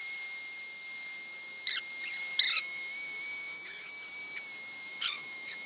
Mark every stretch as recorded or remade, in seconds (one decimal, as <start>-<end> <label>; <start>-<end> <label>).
0.0-2.5 recorded; 2.5-3.9 remade; 3.9-4.9 recorded; 4.9-5.7 remade